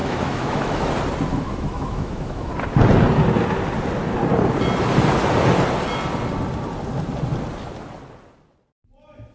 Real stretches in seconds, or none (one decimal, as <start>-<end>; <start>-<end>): 0.9-1.3; 2.5-9.3